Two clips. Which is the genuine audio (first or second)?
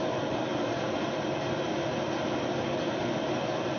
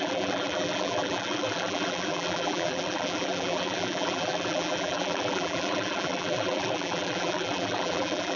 first